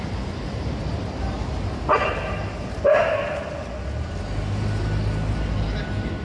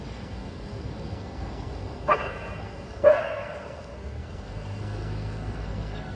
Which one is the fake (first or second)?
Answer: second